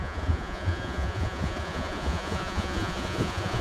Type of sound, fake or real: fake